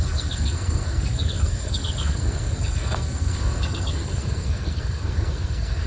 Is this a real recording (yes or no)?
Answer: no